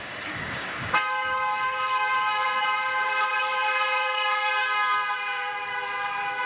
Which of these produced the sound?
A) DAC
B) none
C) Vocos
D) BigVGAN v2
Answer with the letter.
A